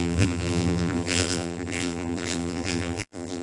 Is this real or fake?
fake